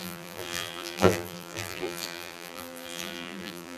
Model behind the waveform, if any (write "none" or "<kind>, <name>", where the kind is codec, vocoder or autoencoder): vocoder, BigVGAN v2